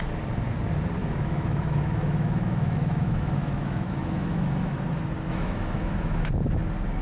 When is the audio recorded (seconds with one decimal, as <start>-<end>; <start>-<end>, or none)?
0.0-1.0; 4.8-5.3; 6.3-7.0